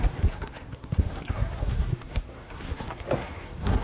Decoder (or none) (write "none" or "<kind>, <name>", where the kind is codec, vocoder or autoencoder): codec, SNAC